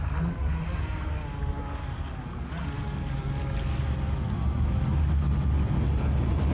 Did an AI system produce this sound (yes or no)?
no